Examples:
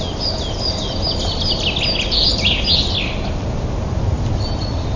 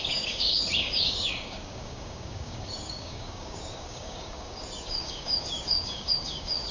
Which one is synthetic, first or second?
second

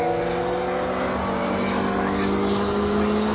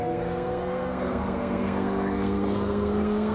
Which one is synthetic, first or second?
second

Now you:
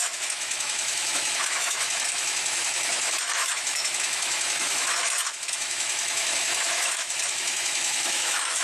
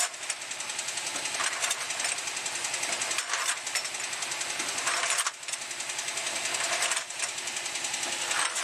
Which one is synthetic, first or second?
first